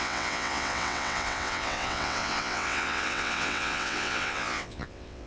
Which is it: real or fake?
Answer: fake